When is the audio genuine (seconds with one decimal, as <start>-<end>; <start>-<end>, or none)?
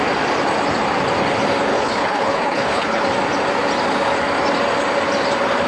0.0-1.7; 3.0-5.7